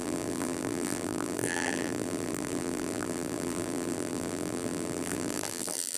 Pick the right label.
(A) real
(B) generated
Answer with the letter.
B